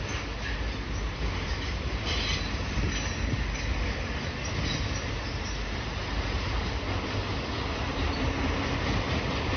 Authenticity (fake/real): real